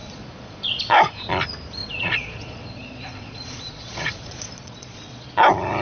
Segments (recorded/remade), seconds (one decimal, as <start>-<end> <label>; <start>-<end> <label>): 0.0-0.8 remade; 0.8-1.8 recorded; 1.8-5.3 remade; 5.3-5.8 recorded